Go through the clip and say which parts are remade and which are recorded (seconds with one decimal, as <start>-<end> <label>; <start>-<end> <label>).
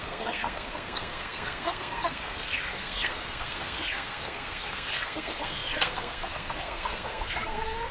0.0-7.9 remade